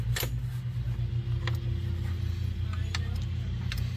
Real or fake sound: real